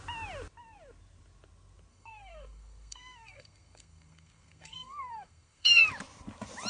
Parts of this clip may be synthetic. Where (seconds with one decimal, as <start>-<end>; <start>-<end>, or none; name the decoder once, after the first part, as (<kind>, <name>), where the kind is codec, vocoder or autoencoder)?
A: 1.9-5.9 (codec, SNAC)